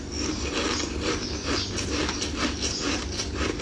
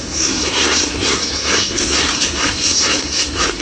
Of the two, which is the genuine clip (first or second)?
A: first